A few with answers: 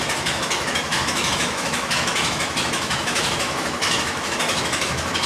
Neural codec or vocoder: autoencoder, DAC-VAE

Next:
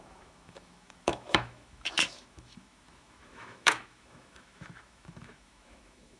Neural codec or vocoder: autoencoder, DAC-VAE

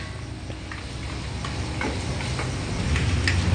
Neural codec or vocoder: none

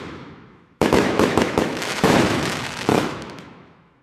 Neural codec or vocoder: autoencoder, DAC-VAE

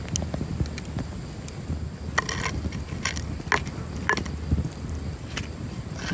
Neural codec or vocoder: none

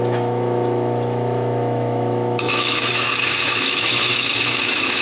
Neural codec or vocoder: autoencoder, DAC-VAE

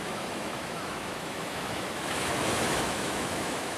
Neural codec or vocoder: autoencoder, DAC-VAE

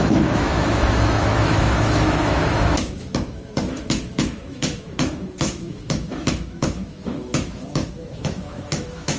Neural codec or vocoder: autoencoder, DAC-VAE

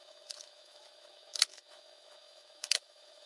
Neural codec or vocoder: autoencoder, DAC-VAE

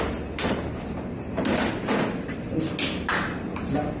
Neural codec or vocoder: none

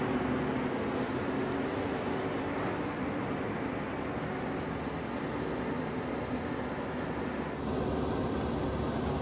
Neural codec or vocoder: none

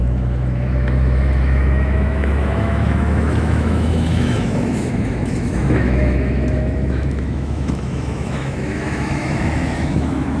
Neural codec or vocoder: autoencoder, DAC-VAE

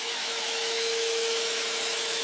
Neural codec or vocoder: autoencoder, DAC-VAE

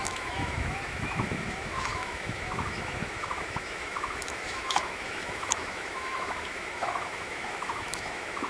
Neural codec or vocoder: autoencoder, DAC-VAE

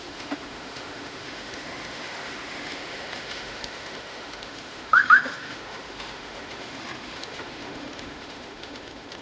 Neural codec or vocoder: autoencoder, DAC-VAE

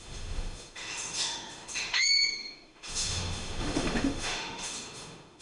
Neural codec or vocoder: autoencoder, DAC-VAE